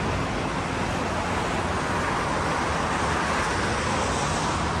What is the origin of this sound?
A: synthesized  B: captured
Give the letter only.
B